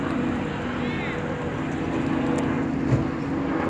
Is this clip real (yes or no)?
yes